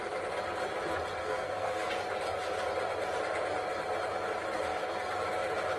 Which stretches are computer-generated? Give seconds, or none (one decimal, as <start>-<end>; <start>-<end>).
1.2-1.9